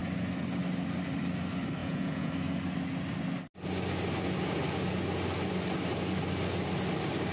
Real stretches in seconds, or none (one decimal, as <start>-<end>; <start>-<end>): 0.0-1.8; 2.3-7.3